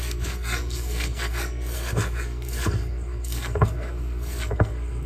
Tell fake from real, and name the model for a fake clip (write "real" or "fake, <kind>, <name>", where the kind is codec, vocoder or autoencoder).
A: fake, codec, SNAC